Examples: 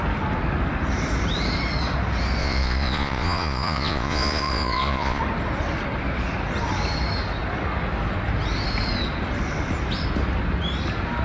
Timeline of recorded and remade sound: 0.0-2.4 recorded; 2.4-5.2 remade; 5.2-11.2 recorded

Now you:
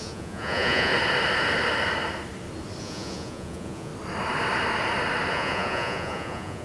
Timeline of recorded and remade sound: 0.0-0.9 remade; 0.9-2.8 recorded; 2.8-3.9 remade; 3.9-5.3 recorded; 5.3-6.6 remade

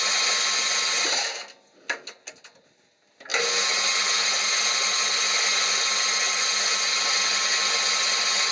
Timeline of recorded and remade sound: 0.0-8.5 recorded

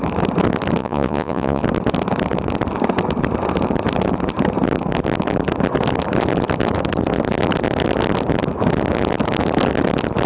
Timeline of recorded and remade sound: 0.0-0.8 recorded; 0.8-1.6 remade; 1.6-10.3 recorded

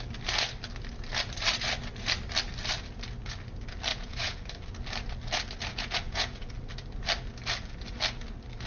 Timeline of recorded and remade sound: 0.0-3.9 recorded; 3.9-4.5 remade; 4.5-5.7 recorded; 5.7-6.5 remade; 6.5-8.7 recorded

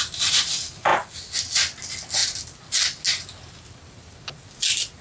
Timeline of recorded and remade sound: 0.0-5.0 recorded

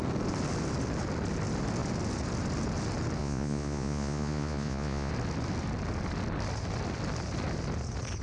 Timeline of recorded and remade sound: 0.0-3.2 recorded; 3.2-5.1 remade; 5.1-8.2 recorded

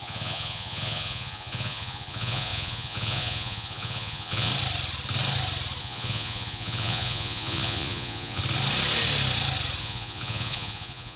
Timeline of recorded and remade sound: 0.0-4.5 remade; 4.5-5.8 recorded; 5.8-8.4 remade; 8.4-9.8 recorded; 9.8-11.2 remade